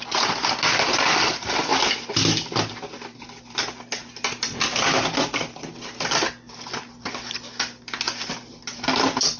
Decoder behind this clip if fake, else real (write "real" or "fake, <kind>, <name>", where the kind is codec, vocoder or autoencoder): real